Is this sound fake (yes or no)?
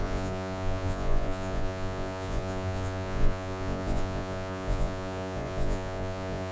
yes